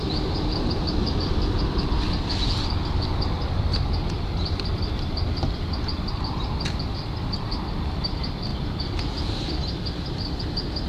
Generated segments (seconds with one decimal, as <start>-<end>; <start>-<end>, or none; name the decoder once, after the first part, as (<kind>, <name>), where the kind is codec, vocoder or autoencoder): none